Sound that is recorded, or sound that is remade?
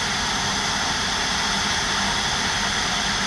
recorded